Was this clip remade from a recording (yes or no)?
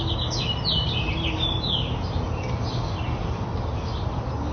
no